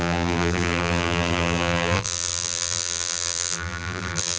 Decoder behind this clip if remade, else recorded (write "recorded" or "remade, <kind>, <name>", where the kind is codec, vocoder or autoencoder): remade, vocoder, BigVGAN v2